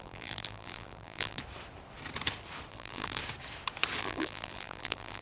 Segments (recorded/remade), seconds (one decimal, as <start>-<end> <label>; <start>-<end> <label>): 0.0-1.4 remade; 1.4-2.7 recorded; 2.7-3.2 remade; 3.2-4.0 recorded; 4.0-5.2 remade